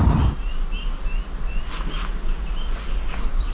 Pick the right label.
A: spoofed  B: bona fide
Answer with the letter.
B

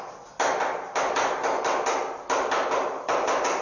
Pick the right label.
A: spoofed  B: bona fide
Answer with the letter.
B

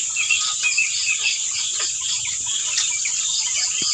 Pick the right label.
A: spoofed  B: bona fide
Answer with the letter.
B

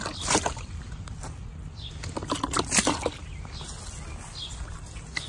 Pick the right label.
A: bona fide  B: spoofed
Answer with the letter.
A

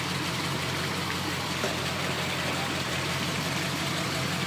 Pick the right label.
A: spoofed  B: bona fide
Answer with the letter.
A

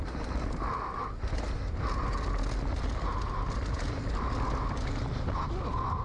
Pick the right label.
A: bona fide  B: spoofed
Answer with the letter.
A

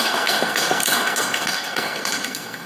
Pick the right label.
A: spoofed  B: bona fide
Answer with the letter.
A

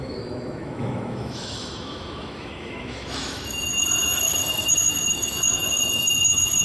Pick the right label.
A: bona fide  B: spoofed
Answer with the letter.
B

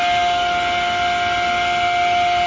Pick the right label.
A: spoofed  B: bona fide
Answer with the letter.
B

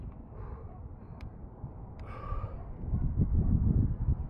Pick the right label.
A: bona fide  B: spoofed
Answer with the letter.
A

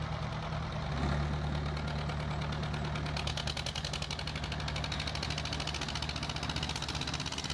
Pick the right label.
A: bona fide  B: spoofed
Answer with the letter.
A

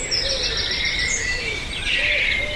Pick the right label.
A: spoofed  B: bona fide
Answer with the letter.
B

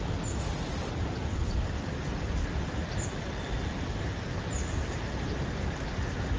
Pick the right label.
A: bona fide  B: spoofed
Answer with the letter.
A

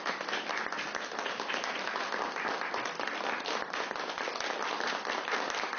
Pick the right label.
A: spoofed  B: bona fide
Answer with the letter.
B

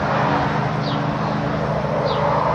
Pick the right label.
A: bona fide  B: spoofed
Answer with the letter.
A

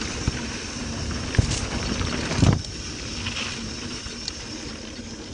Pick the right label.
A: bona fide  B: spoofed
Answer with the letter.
A